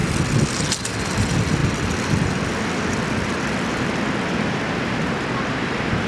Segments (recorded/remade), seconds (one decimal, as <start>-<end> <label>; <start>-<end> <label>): 0.0-6.1 recorded